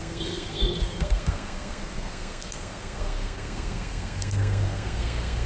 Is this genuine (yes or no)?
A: no